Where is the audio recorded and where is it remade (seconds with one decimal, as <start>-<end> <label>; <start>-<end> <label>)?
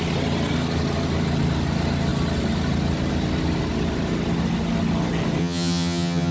0.0-5.4 recorded; 5.4-6.3 remade